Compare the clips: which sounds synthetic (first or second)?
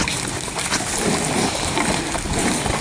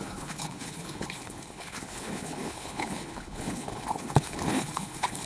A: second